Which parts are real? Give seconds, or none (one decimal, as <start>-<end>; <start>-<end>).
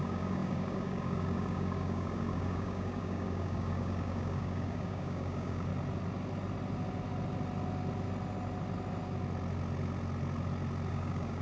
5.7-10.9